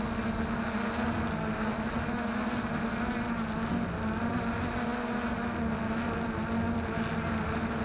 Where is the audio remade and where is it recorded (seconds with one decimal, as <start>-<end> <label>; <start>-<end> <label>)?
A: 0.0-7.8 recorded